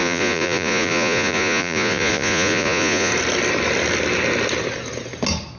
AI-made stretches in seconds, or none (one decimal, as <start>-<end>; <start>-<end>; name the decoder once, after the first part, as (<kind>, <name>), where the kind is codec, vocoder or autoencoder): 0.0-3.1 (vocoder, Vocos)